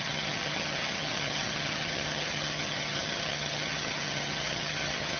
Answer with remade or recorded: remade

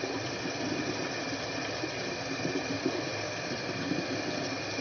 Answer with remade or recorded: recorded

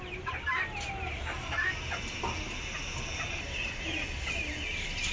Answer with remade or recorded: recorded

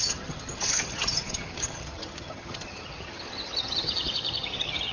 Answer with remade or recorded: remade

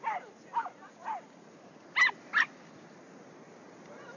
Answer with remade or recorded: recorded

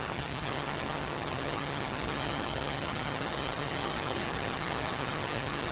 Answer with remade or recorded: remade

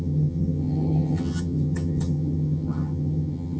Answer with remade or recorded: remade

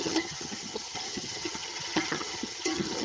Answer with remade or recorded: remade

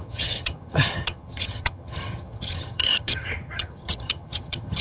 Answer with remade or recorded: remade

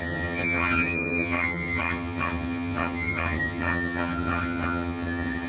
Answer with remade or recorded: remade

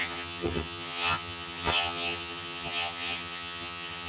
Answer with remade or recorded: remade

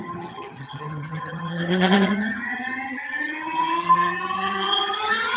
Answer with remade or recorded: remade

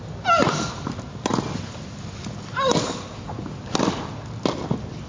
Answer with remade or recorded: recorded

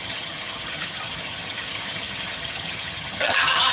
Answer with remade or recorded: remade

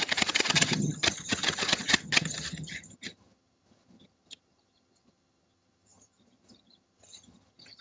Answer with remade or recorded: remade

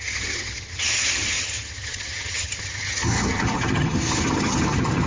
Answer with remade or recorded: remade